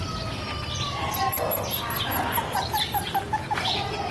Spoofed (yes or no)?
yes